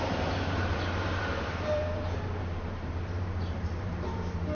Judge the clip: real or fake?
fake